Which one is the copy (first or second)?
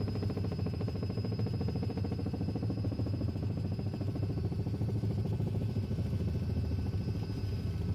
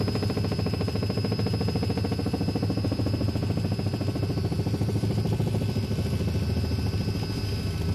first